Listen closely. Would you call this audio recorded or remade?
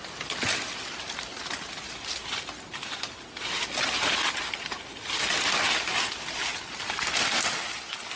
recorded